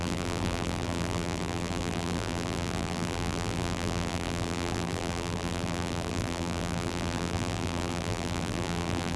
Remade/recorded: remade